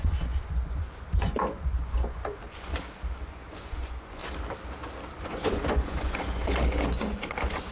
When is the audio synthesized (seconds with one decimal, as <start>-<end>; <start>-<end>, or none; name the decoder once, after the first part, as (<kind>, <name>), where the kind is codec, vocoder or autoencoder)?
0.0-2.7 (vocoder, Vocos); 3.2-4.2; 5.2-7.7